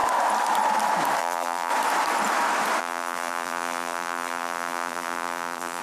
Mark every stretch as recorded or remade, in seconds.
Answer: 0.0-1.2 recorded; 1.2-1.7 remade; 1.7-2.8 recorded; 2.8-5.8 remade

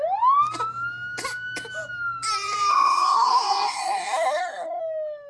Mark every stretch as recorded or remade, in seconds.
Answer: 0.0-2.7 recorded; 2.7-4.8 remade; 4.8-5.3 recorded